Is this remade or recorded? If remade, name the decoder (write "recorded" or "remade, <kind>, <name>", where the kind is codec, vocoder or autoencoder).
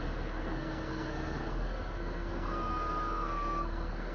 remade, codec, SNAC